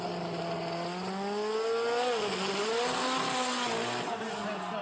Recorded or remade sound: recorded